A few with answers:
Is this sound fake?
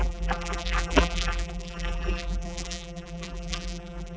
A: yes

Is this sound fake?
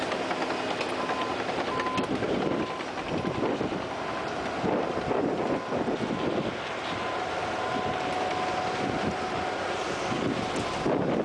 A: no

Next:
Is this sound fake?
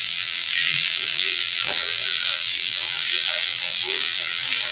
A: yes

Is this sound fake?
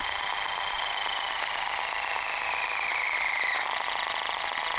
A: no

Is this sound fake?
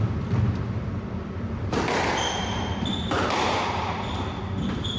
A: yes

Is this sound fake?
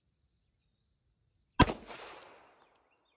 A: no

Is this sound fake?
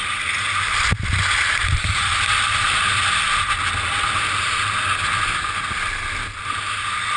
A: no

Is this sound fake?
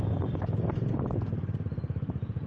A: yes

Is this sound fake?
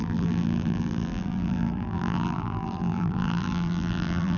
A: yes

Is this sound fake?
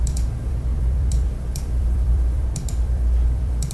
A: yes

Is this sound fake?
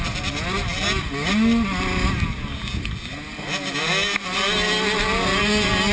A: no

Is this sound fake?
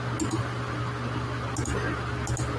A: no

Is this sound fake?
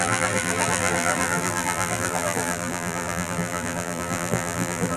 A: yes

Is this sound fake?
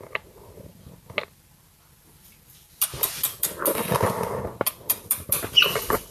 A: no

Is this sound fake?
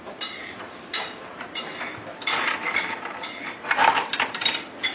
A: yes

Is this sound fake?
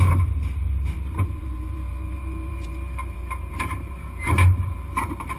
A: yes